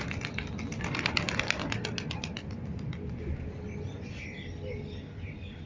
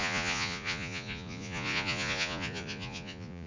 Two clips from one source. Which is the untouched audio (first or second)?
first